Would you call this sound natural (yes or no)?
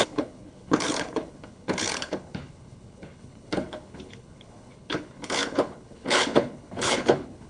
no